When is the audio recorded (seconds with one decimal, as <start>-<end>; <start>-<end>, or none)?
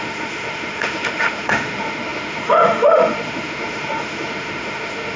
none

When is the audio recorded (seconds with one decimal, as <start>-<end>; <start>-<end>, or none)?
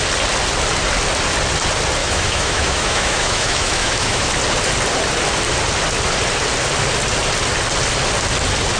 0.0-2.0; 4.3-8.8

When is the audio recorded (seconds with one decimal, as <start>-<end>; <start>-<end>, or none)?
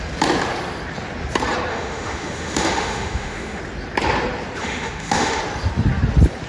0.0-1.7; 3.6-4.6; 5.4-6.5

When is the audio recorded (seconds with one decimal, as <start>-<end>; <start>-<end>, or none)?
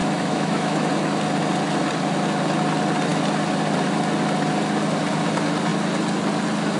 0.9-6.8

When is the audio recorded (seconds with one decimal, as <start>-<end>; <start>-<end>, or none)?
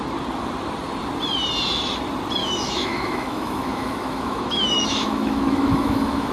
0.0-2.4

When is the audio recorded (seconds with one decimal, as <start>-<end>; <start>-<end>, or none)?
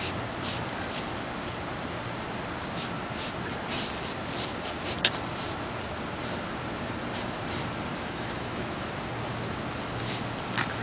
0.0-7.9; 8.9-10.8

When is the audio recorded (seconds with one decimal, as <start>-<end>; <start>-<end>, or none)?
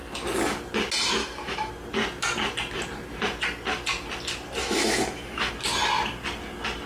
0.0-1.2; 1.7-4.6; 5.5-6.9